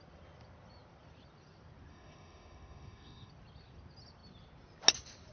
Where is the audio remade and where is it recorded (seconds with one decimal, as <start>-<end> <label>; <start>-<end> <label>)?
0.0-1.9 recorded; 1.9-3.3 remade; 3.3-5.3 recorded